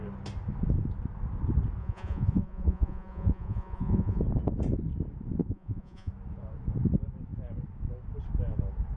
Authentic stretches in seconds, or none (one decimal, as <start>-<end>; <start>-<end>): 0.0-1.8; 4.2-5.4; 6.1-9.0